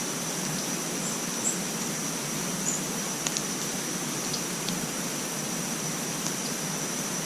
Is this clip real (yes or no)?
no